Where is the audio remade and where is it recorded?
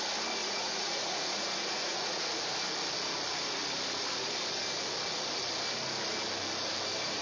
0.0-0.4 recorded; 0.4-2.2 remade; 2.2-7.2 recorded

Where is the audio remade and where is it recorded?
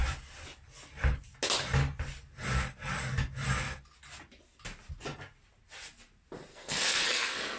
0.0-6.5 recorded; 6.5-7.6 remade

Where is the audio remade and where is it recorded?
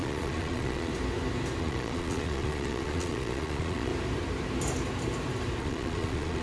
0.0-0.9 remade; 0.9-1.6 recorded; 1.6-3.9 remade; 3.9-5.6 recorded; 5.6-6.4 remade